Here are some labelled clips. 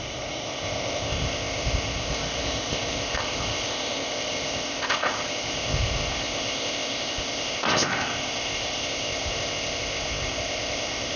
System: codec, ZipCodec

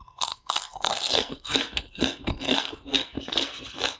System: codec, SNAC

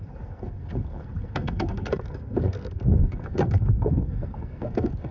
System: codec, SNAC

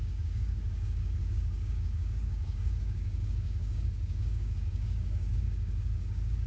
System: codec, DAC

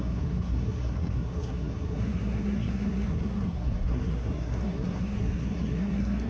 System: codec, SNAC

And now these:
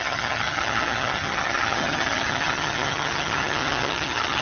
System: vocoder, HiFi-GAN